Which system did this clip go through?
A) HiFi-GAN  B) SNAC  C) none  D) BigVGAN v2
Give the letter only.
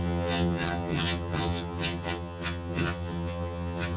A